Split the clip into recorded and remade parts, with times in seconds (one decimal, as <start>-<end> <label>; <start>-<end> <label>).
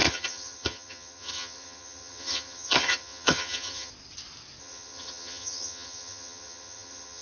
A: 0.0-3.9 remade; 3.9-4.6 recorded; 4.6-7.2 remade